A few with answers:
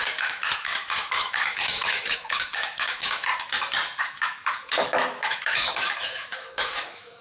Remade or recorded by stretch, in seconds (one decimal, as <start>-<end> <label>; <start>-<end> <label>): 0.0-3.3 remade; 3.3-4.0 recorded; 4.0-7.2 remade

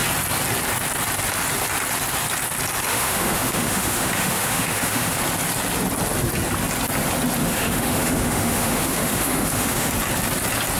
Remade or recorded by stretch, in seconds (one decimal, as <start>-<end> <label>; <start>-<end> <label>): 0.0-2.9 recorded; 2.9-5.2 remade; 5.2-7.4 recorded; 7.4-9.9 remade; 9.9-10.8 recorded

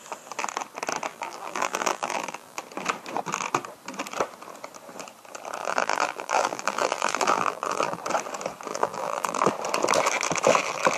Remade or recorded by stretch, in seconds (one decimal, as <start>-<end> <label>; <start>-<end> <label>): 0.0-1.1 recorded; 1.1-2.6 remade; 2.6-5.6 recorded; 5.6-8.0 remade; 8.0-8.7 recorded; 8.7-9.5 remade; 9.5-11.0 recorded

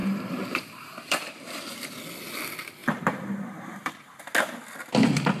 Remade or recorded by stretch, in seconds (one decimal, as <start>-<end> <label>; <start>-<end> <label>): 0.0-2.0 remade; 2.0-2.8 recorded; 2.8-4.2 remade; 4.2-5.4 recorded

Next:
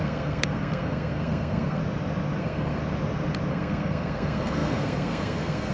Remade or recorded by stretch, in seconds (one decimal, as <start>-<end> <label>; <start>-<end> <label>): 0.0-1.8 remade; 1.8-2.4 recorded; 2.4-2.8 remade; 2.8-3.5 recorded; 3.5-5.7 remade